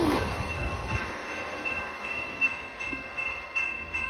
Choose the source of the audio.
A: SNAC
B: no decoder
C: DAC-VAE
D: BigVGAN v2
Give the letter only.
A